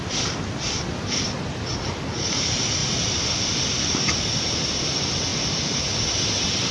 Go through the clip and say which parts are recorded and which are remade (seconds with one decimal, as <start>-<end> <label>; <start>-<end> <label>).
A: 0.0-6.7 recorded